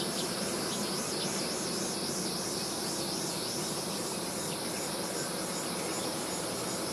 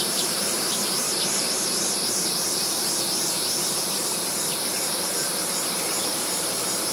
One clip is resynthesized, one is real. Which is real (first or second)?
first